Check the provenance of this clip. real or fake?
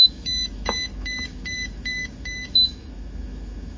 fake